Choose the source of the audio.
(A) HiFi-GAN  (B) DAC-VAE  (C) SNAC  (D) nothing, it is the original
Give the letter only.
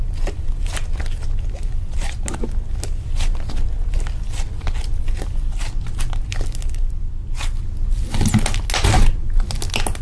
D